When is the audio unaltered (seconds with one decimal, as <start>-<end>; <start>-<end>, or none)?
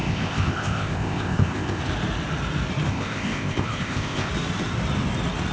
1.8-2.9; 4.3-5.5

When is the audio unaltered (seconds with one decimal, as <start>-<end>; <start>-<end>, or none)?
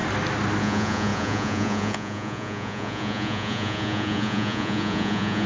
0.0-0.6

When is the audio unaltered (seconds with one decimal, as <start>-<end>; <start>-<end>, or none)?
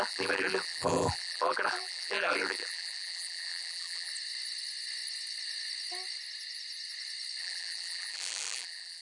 4.1-7.4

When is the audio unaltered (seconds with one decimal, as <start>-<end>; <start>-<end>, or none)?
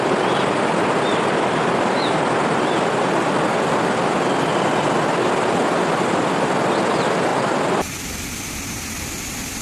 0.0-9.6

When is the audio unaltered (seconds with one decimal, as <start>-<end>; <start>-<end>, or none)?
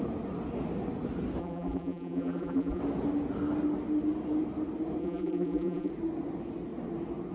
0.0-1.4; 2.8-5.0; 5.9-7.3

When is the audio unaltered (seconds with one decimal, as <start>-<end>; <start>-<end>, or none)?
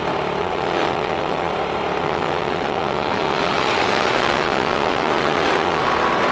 0.0-0.4; 1.5-2.0; 5.8-6.3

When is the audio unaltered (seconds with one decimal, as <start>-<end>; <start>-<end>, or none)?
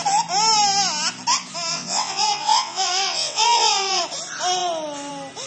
0.0-1.7; 4.0-5.5